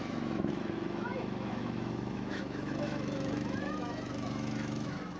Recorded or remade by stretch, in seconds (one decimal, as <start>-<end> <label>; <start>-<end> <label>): 0.0-5.2 remade